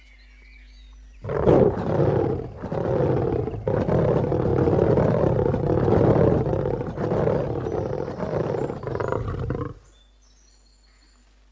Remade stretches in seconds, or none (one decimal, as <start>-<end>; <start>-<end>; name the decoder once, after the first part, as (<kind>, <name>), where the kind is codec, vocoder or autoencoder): none